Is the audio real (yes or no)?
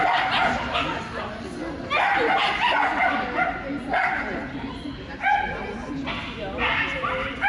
yes